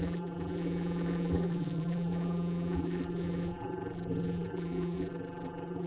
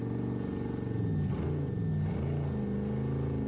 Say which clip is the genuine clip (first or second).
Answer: second